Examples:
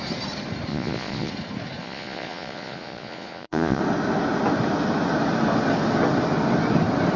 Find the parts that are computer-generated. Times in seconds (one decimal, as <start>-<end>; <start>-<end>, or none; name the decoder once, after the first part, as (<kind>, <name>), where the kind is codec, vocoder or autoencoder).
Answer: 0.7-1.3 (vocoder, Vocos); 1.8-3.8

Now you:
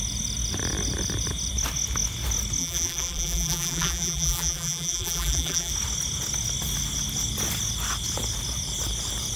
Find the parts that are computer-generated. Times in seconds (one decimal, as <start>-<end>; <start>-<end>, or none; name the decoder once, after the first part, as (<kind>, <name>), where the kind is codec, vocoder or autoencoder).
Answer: 2.6-5.7 (vocoder, BigVGAN v2)

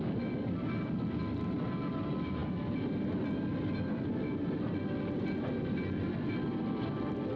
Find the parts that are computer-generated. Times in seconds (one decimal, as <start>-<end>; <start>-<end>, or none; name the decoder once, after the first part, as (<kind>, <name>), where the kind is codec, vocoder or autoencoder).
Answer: none

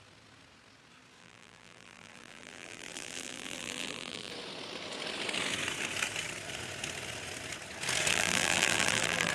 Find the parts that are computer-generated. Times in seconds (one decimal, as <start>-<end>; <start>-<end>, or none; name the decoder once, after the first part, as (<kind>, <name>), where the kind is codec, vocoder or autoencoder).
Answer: 1.2-4.3 (vocoder, BigVGAN v2); 8.1-9.3

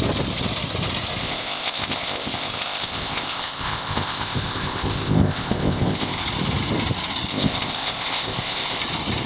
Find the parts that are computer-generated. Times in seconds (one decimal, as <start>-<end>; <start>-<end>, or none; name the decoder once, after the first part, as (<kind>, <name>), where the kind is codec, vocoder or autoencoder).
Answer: 1.2-6.2 (codec, ZipCodec); 7.3-8.8